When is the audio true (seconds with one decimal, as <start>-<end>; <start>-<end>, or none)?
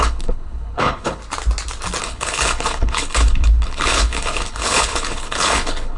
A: 1.2-2.0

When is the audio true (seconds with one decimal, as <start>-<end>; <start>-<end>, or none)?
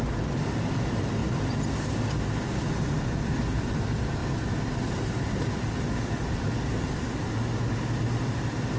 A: 0.0-8.8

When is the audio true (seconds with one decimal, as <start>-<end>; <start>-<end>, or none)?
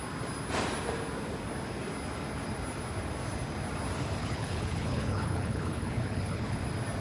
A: 0.0-4.2; 6.6-7.0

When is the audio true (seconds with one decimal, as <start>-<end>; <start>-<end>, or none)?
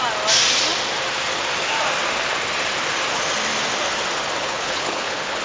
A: 0.0-4.4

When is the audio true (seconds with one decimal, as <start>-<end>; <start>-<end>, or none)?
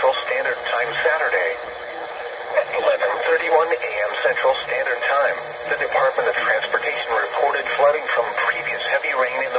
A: 0.0-1.6; 3.5-9.6